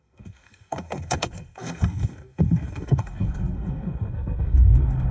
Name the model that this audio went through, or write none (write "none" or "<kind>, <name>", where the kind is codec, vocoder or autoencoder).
codec, SNAC